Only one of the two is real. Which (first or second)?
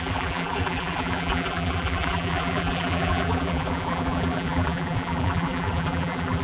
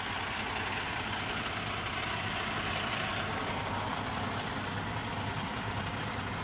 second